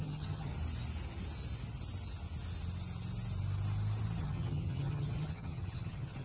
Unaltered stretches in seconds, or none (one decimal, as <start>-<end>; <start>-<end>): 0.5-4.2